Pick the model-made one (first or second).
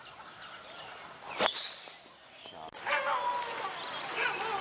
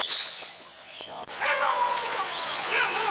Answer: second